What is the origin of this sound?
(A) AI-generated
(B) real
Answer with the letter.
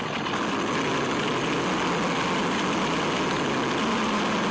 B